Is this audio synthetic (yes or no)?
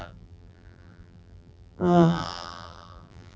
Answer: yes